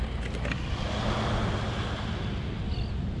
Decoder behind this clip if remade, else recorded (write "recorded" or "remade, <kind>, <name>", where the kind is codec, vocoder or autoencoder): recorded